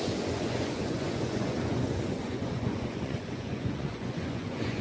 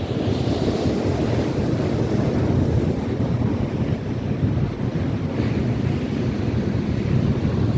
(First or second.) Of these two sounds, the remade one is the first